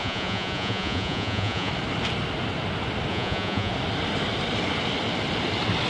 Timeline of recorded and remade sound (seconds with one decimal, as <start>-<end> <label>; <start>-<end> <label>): 0.0-1.7 remade; 1.7-3.1 recorded; 3.1-3.7 remade; 3.7-5.9 recorded